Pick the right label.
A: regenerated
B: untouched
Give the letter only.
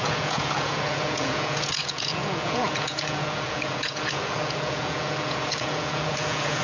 A